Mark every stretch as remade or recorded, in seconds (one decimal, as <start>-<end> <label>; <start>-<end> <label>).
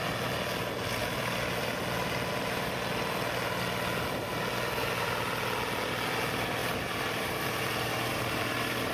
0.0-6.6 recorded; 6.6-8.9 remade